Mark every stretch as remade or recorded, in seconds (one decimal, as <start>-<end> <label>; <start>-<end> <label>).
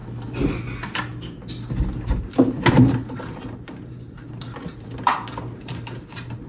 0.0-2.7 recorded; 2.7-6.5 remade